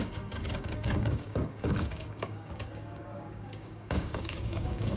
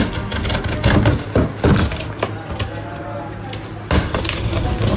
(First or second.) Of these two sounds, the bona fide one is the second